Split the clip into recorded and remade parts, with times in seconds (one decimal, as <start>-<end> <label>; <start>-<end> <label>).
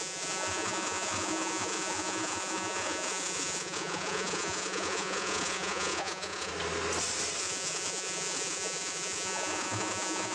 0.0-6.5 remade; 6.5-7.4 recorded; 7.4-10.3 remade